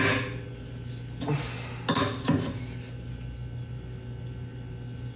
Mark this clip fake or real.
real